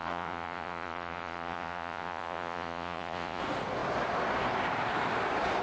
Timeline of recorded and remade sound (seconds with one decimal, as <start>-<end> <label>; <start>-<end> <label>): 0.0-3.4 remade; 3.4-5.6 recorded